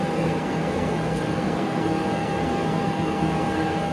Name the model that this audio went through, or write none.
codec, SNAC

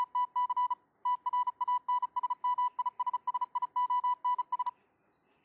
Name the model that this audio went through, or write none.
none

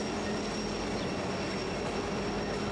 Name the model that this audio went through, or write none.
none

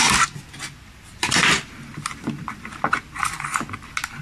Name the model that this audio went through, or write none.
none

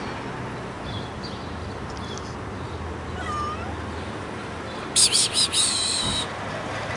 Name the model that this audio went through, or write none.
none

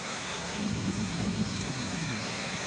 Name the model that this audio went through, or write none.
codec, SNAC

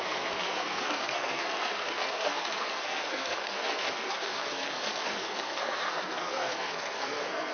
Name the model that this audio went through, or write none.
codec, SNAC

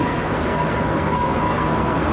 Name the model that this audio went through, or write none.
codec, SNAC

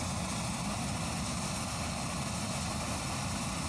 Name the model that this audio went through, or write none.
none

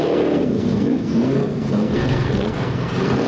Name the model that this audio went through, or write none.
codec, SNAC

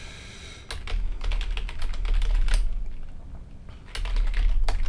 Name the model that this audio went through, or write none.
none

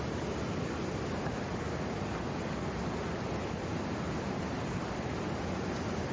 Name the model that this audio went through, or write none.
none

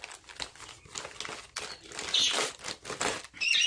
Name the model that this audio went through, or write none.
none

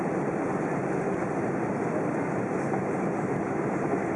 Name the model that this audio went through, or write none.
none